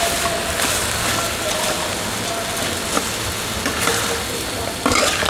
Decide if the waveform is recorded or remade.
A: recorded